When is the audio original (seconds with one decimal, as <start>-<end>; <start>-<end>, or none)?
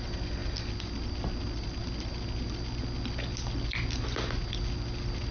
0.0-5.3